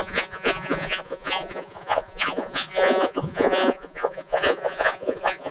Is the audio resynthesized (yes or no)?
yes